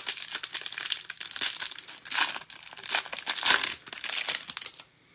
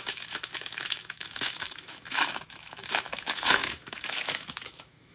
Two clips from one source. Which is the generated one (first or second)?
second